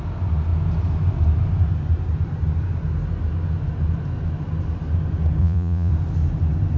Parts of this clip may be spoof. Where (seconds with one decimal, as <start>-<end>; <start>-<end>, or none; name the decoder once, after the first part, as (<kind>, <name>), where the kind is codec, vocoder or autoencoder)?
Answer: 5.4-5.9 (vocoder, Vocos)